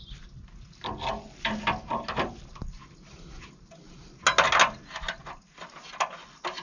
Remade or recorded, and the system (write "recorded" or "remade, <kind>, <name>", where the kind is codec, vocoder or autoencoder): recorded